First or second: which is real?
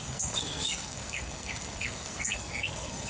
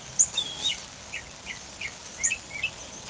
second